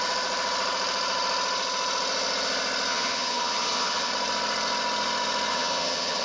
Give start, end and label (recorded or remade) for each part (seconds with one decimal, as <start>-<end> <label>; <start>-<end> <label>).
0.0-2.9 recorded; 2.9-4.1 remade; 4.1-5.5 recorded; 5.5-6.2 remade